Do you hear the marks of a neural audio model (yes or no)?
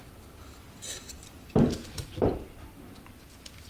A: no